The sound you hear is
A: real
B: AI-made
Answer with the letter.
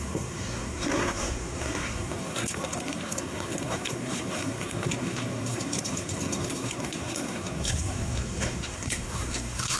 B